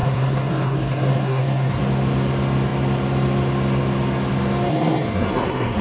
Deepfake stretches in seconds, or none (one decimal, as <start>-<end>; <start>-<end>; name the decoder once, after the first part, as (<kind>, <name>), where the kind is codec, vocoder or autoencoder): 0.0-1.8 (codec, SNAC); 4.7-5.8